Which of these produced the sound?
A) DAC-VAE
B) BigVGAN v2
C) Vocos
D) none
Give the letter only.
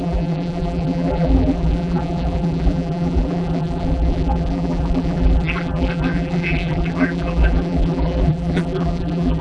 B